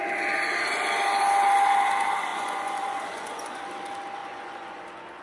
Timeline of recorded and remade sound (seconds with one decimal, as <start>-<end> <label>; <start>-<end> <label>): 0.0-2.3 recorded; 2.3-3.6 remade; 3.6-4.2 recorded; 4.2-4.8 remade; 4.8-5.2 recorded